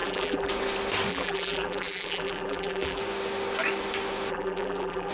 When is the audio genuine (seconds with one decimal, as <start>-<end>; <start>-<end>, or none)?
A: 0.5-1.1; 3.0-4.3